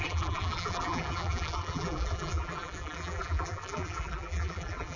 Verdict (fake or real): fake